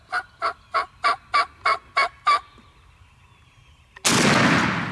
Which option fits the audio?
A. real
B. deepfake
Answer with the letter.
A